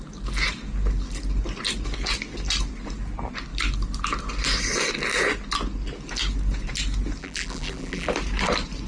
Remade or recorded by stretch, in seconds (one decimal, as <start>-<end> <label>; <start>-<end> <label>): 0.0-7.2 recorded; 7.2-8.1 remade; 8.1-8.9 recorded